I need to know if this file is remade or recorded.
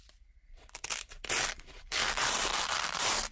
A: remade